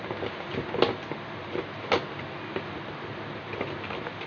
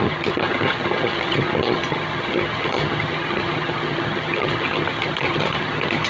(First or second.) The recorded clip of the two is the first